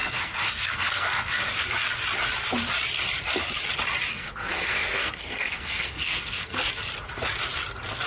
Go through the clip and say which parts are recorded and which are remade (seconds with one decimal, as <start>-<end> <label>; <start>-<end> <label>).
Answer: 0.0-1.6 remade; 1.6-4.1 recorded; 4.1-6.6 remade; 6.6-8.1 recorded